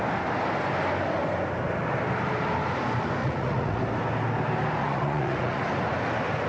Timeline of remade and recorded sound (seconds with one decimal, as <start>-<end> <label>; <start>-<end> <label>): 0.0-3.2 recorded; 3.2-3.8 remade; 3.8-4.8 recorded; 4.8-5.6 remade; 5.6-6.5 recorded